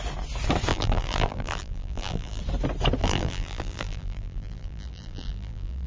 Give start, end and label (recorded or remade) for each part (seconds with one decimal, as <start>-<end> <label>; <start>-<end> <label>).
0.0-0.7 recorded; 0.7-2.4 remade; 2.4-3.0 recorded; 3.0-5.9 remade